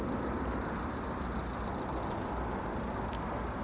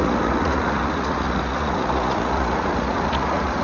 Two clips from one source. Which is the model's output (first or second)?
second